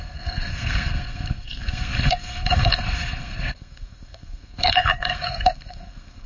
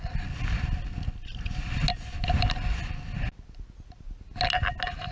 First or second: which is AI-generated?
first